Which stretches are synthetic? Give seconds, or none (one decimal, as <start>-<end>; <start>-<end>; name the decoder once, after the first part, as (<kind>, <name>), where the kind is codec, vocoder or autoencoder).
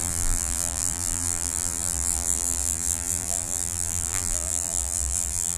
0.0-5.6 (vocoder, BigVGAN v2)